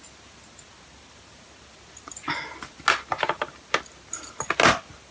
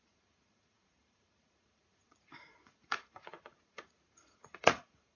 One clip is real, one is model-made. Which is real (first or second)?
first